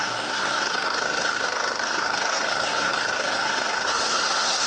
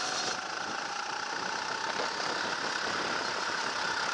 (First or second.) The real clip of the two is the second